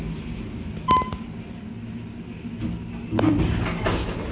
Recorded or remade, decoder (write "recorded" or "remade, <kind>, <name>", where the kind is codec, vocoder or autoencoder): recorded